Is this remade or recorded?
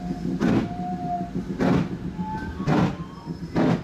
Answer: recorded